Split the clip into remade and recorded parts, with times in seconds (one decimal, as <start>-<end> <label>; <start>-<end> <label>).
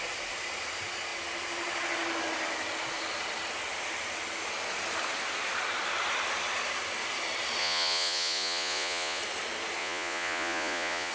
0.0-7.6 recorded; 7.6-9.2 remade; 9.2-9.8 recorded; 9.8-11.1 remade